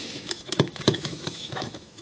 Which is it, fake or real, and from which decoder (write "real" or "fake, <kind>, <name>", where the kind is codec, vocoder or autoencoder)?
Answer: fake, autoencoder, DAC-VAE